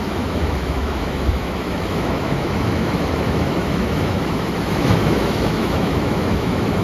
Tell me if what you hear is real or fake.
fake